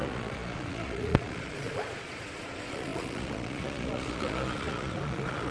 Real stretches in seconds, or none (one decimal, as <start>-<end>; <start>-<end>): none